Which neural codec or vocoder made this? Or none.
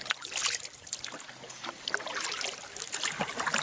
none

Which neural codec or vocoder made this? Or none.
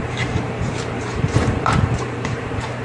vocoder, BigVGAN v2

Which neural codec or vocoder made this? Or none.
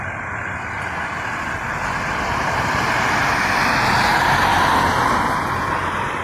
none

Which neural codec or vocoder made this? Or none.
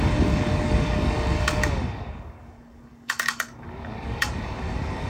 codec, DAC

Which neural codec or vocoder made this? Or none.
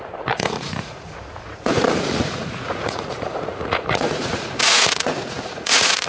vocoder, Vocos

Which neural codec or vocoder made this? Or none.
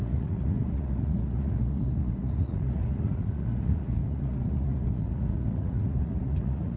vocoder, Vocos